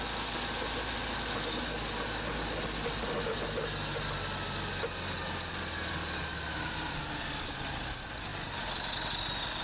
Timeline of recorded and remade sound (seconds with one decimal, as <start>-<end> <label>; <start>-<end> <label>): 0.0-9.6 recorded

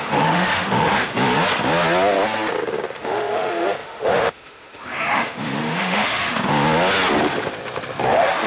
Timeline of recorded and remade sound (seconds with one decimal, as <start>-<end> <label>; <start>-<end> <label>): 0.0-1.1 remade; 1.1-3.0 recorded; 3.0-6.5 remade; 6.5-8.1 recorded; 8.1-8.5 remade

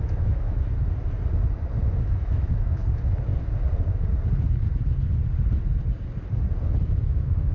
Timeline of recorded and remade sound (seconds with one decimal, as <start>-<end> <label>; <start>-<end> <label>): 0.0-0.7 remade; 0.7-2.0 recorded; 2.0-2.8 remade; 2.8-6.8 recorded; 6.8-7.5 remade